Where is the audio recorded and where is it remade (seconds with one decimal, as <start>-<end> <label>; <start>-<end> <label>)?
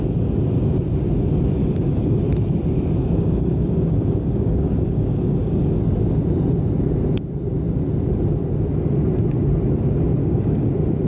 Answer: 0.0-1.6 recorded; 1.6-2.2 remade; 2.2-3.0 recorded; 3.0-5.8 remade; 5.8-10.2 recorded; 10.2-10.7 remade; 10.7-11.1 recorded